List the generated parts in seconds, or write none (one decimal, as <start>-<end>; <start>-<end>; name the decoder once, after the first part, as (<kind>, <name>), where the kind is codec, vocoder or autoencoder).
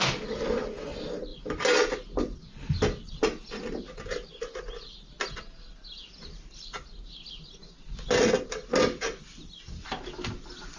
none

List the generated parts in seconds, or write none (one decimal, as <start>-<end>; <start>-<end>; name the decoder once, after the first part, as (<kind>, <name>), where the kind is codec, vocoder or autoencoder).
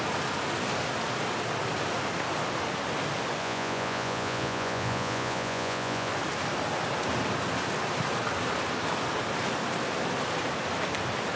3.4-6.1 (vocoder, Vocos)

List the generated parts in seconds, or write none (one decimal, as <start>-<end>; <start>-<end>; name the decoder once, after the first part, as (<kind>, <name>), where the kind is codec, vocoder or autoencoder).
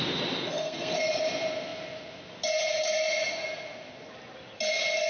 0.5-1.0 (codec, SNAC)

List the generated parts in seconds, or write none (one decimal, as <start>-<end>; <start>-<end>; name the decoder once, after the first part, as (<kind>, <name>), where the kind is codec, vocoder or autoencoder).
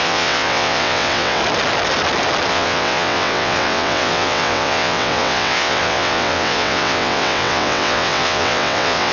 0.0-1.4 (vocoder, WaveNeXt); 2.5-9.1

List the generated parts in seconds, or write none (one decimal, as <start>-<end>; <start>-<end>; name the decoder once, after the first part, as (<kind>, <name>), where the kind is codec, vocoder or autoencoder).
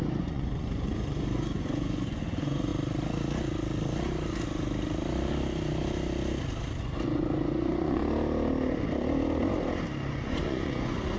0.0-2.7 (vocoder, Vocos); 6.8-8.0; 10.1-11.2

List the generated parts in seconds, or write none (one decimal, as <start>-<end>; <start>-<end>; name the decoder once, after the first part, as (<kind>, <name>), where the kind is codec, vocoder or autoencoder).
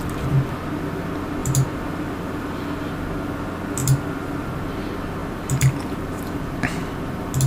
1.4-3.0 (vocoder, BigVGAN v2); 3.8-4.3; 5.2-6.4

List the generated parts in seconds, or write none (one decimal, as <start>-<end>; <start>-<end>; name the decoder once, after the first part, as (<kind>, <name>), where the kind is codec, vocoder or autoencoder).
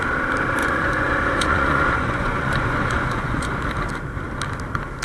0.6-3.5 (vocoder, Vocos)